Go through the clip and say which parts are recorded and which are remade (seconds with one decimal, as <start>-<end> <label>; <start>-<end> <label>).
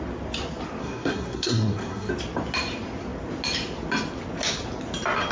0.0-0.8 recorded; 0.8-2.1 remade; 2.1-5.3 recorded